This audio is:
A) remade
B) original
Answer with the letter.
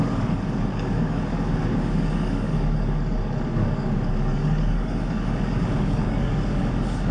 A